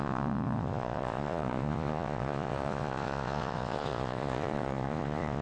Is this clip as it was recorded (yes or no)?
no